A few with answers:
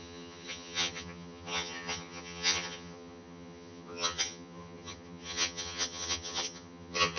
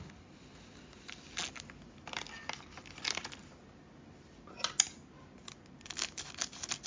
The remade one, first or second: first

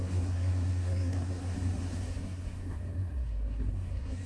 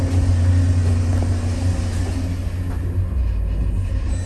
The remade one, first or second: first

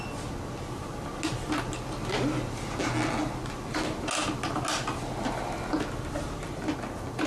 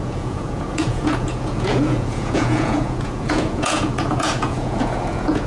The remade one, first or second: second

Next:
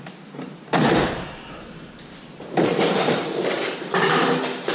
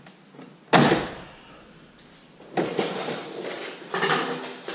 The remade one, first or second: first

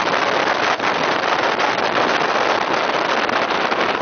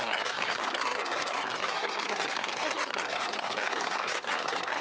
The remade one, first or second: second